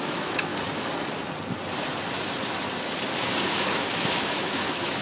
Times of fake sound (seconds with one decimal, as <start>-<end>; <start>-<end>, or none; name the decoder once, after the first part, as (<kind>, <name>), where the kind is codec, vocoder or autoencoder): 0.0-0.5 (autoencoder, DAC-VAE); 3.5-5.0